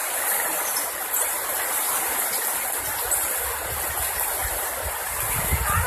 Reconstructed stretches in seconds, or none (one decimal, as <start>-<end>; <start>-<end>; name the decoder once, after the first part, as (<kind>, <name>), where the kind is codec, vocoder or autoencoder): 4.4-5.5 (vocoder, BigVGAN v2)